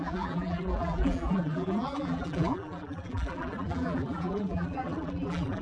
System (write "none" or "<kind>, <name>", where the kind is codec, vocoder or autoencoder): vocoder, BigVGAN v2